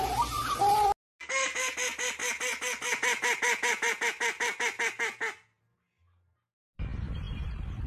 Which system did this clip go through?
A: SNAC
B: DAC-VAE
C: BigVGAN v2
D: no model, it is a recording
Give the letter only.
D